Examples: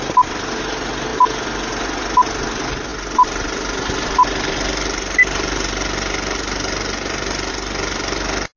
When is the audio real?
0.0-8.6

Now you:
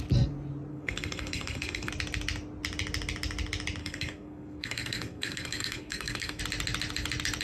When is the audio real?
0.0-0.7; 1.9-3.8; 6.4-7.4

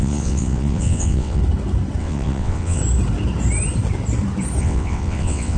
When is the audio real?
1.4-2.0; 2.8-4.6